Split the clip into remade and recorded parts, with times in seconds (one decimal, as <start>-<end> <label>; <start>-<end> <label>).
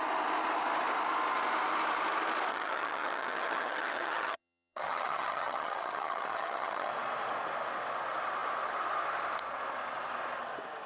0.0-2.5 recorded; 2.5-6.9 remade; 6.9-10.9 recorded